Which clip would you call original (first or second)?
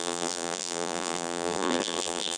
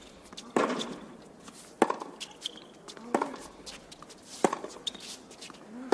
second